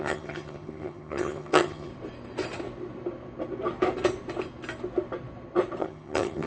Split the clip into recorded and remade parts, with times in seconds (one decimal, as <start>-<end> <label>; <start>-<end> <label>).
0.0-1.9 remade; 1.9-5.8 recorded; 5.8-6.5 remade